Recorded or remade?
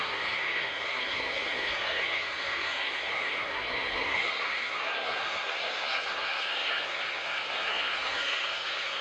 remade